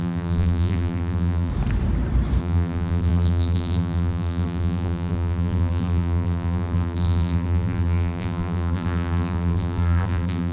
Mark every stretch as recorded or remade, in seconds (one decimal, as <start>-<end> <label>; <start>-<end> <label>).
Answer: 0.0-1.5 remade; 1.5-2.4 recorded; 2.4-10.5 remade